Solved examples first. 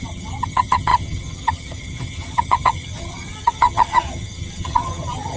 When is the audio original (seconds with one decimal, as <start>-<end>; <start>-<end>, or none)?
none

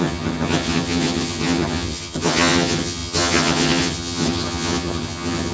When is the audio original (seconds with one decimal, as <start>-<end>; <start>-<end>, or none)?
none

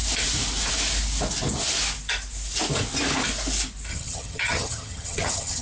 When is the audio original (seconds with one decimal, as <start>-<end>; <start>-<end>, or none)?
0.0-3.9